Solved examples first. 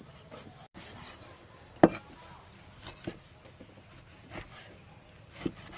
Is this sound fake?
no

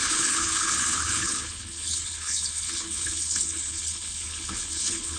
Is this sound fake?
yes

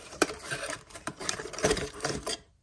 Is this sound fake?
yes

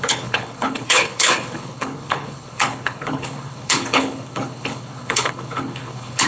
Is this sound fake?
yes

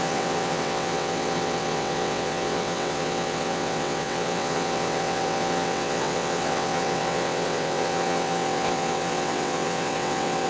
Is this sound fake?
yes